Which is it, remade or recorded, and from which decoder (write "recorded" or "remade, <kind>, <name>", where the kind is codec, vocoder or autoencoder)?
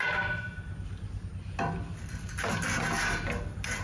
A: recorded